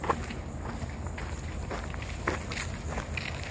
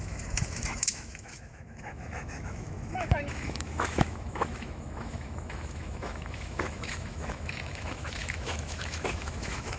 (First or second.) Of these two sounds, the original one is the first